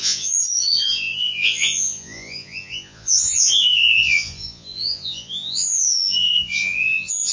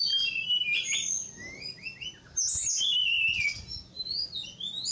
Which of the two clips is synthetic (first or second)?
first